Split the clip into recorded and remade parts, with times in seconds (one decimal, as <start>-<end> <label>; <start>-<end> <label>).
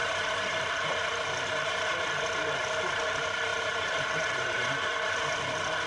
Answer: 0.0-0.6 remade; 0.6-3.5 recorded; 3.5-5.3 remade; 5.3-5.9 recorded